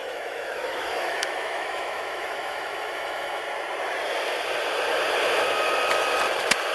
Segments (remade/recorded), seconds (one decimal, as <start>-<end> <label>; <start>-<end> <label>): 0.0-3.4 remade; 3.4-6.7 recorded